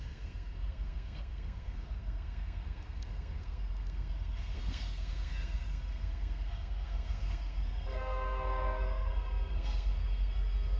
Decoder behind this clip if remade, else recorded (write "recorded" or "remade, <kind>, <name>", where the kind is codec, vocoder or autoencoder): remade, codec, SNAC